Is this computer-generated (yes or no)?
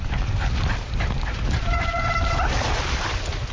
no